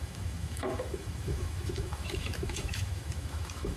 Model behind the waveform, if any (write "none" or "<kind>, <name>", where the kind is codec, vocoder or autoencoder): autoencoder, DAC-VAE